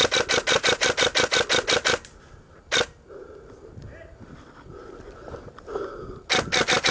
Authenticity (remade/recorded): recorded